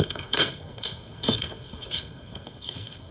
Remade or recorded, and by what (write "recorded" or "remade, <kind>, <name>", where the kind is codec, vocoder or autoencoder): remade, codec, SNAC